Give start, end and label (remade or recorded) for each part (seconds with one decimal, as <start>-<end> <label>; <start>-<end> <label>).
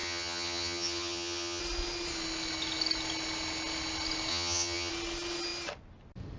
0.0-1.6 remade; 1.6-4.3 recorded; 4.3-4.9 remade; 4.9-6.4 recorded